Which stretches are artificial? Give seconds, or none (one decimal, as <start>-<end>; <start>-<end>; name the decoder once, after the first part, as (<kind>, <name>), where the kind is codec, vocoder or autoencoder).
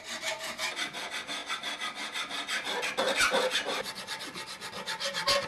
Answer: none